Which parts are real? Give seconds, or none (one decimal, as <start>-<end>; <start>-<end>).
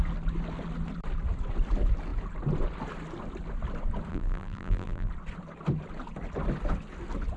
0.0-4.1; 5.1-7.4